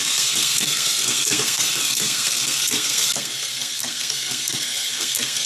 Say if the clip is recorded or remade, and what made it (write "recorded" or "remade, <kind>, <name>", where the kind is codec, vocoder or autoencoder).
remade, codec, SNAC